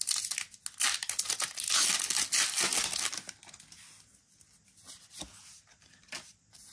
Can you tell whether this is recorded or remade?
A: recorded